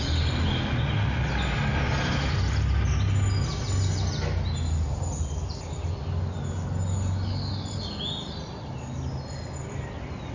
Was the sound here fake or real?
real